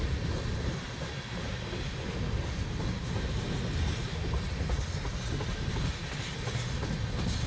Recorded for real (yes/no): yes